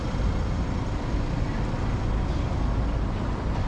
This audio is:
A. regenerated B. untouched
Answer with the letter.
B